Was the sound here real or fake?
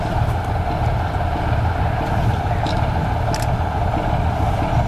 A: real